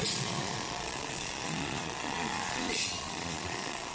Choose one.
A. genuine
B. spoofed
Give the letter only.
B